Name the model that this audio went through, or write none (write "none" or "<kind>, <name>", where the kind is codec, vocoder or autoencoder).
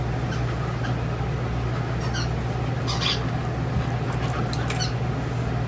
none